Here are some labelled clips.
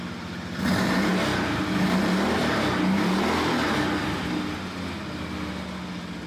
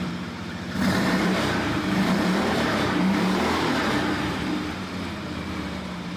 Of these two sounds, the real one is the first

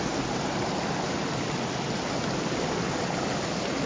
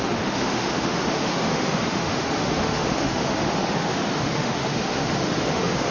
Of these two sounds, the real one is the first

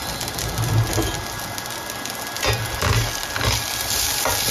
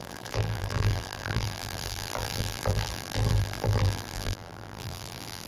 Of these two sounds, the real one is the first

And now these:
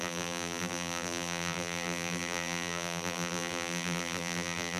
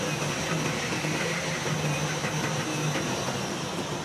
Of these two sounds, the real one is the second